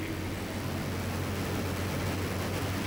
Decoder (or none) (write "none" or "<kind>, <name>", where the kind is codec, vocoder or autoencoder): none